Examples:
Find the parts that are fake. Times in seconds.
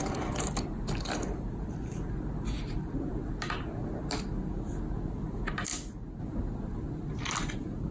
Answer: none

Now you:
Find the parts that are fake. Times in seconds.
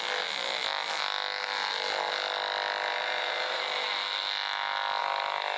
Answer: 2.9-3.6 (vocoder, BigVGAN v2)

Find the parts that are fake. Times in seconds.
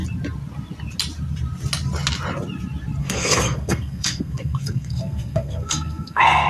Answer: 3.0-6.5 (codec, SNAC)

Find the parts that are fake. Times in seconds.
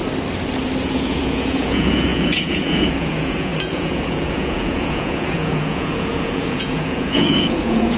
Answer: 0.8-8.0 (vocoder, Vocos)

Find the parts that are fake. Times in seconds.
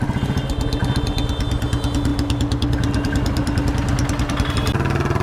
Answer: none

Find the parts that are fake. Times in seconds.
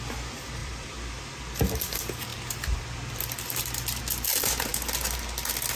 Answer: 0.6-1.4 (vocoder, BigVGAN v2); 2.3-4.0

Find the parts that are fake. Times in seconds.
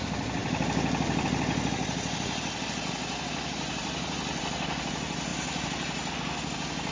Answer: 3.8-4.4 (vocoder, BigVGAN v2)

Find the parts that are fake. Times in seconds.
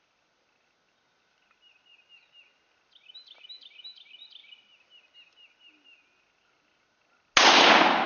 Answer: none